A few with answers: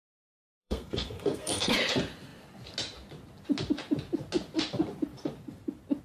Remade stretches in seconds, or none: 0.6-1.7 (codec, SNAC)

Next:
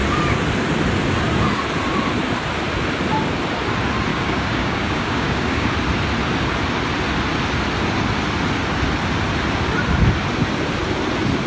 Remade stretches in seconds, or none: 4.1-5.7 (codec, DAC)

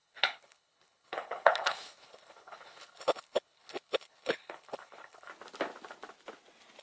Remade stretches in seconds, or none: 0.0-5.3 (codec, HILCodec)

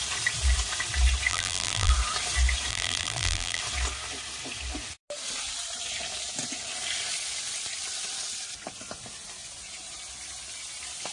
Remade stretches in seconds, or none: 1.3-1.9 (vocoder, BigVGAN v2); 2.7-3.6